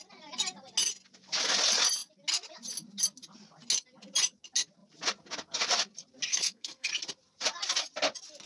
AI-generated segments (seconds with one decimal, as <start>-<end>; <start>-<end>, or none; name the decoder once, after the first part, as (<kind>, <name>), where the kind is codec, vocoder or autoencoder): 6.3-6.9 (codec, SNAC)